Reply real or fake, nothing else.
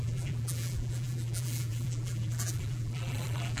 fake